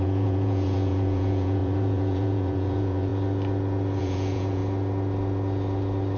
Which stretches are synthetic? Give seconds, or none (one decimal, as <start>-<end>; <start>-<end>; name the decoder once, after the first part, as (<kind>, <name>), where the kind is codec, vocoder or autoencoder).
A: 0.0-3.1 (vocoder, Vocos); 4.0-4.6